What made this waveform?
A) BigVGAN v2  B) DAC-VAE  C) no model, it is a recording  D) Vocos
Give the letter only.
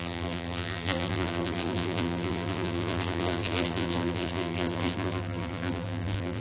A